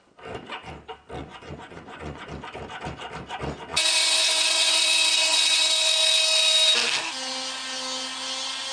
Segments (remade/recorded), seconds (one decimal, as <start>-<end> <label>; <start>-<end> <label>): 0.0-1.2 recorded; 1.2-2.3 remade; 2.3-3.7 recorded; 3.7-5.9 remade; 5.9-8.7 recorded